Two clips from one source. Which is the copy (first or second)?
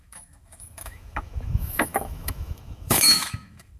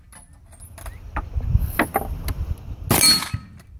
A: first